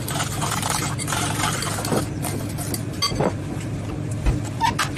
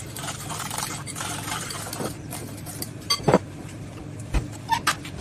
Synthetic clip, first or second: second